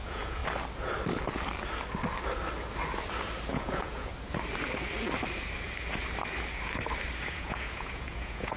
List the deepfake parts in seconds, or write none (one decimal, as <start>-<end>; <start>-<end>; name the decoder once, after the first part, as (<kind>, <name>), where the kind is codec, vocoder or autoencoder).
0.0-0.4 (vocoder, Vocos); 3.5-4.1; 7.3-8.6